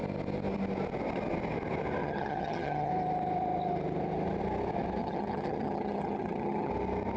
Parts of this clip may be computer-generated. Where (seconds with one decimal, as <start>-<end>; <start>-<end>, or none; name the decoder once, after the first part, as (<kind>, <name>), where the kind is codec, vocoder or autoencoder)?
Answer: 2.0-2.9 (vocoder, HiFi-GAN); 5.0-6.7